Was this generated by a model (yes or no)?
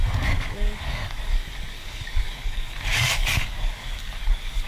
yes